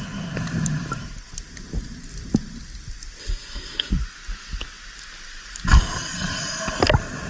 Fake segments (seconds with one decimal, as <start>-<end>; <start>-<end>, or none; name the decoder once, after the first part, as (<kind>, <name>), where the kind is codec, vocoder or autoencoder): 3.2-3.9 (codec, SNAC)